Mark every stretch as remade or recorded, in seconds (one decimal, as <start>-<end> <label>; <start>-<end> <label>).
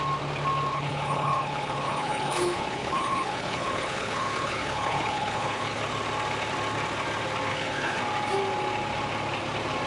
0.0-0.7 recorded; 0.7-5.8 remade; 5.8-7.5 recorded; 7.5-8.0 remade; 8.0-9.9 recorded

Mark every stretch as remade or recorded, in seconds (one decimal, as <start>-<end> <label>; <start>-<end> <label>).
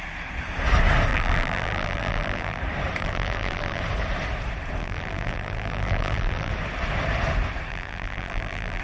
0.0-1.1 recorded; 1.1-2.6 remade; 2.6-3.0 recorded; 3.0-3.8 remade; 3.8-4.8 recorded; 4.8-6.5 remade; 6.5-7.7 recorded; 7.7-8.8 remade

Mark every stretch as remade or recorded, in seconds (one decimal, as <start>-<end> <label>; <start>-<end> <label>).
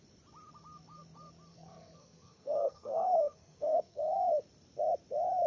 0.0-1.5 recorded; 1.5-4.3 remade; 4.3-5.5 recorded